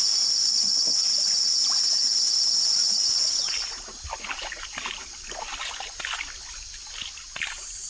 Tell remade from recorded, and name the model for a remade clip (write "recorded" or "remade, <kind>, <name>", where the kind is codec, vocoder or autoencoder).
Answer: recorded